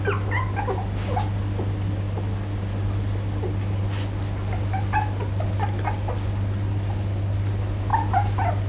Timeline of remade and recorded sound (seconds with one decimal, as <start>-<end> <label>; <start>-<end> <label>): 0.0-8.7 recorded